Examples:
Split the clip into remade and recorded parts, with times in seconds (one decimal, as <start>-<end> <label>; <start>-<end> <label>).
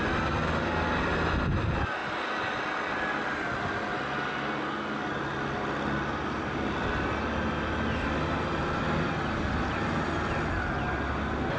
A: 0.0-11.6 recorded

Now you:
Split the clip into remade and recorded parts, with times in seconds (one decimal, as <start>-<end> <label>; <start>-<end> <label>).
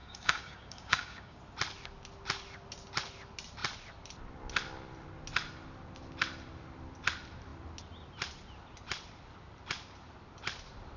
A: 0.0-1.4 remade; 1.4-11.0 recorded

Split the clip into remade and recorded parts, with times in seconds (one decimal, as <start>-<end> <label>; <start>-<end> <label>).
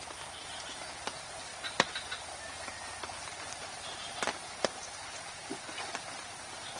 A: 0.0-6.8 recorded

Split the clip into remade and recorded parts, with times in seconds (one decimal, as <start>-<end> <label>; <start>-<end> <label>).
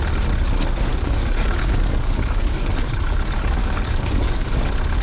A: 0.0-0.9 recorded; 0.9-2.9 remade; 2.9-3.6 recorded; 3.6-4.5 remade; 4.5-5.0 recorded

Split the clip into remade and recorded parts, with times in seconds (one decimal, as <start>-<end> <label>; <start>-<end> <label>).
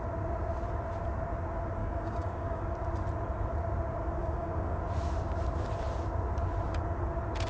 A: 0.0-1.8 recorded; 1.8-2.6 remade; 2.6-4.2 recorded; 4.2-4.8 remade; 4.8-7.5 recorded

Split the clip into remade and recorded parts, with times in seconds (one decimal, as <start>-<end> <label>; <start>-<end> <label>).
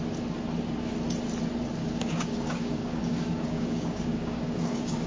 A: 0.0-1.8 recorded; 1.8-5.1 remade